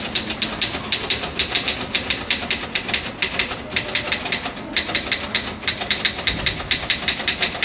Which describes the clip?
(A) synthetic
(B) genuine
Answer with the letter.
B